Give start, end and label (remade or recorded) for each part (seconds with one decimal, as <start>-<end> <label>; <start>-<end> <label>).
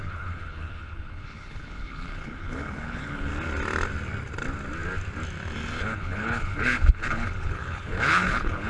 0.0-3.3 remade; 3.3-5.8 recorded; 5.8-8.7 remade